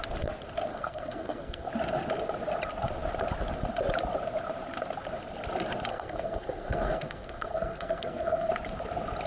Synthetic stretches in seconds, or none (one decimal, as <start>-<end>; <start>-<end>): 0.7-1.7; 5.9-8.5